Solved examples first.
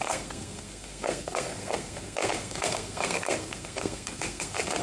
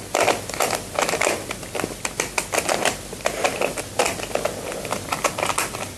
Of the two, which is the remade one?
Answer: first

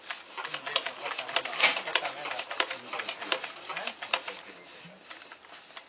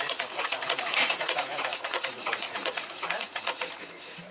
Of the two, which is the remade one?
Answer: second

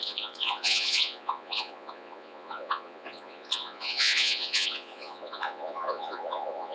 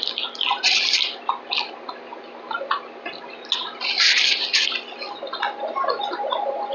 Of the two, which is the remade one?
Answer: first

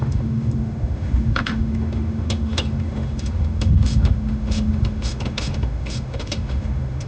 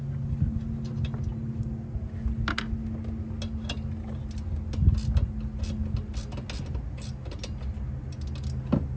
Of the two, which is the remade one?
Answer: first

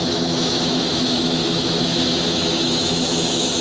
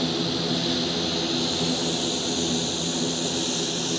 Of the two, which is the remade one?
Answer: first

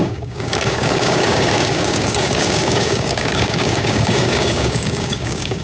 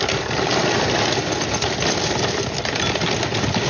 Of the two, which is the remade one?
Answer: first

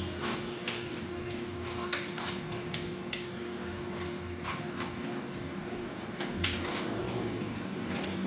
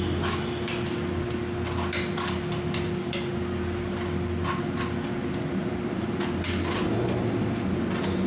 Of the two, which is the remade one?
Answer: first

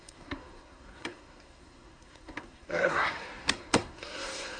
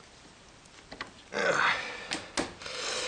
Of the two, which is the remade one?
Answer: first